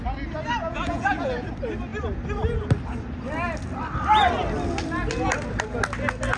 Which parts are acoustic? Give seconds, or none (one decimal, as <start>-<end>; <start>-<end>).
0.0-0.6; 1.5-6.4